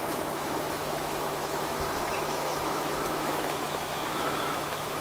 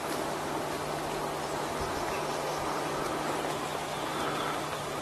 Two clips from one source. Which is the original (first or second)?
second